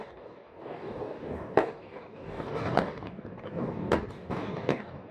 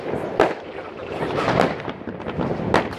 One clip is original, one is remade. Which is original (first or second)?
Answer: second